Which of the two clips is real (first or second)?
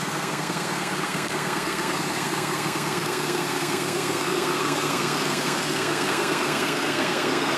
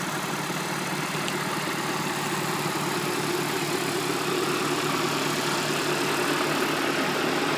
second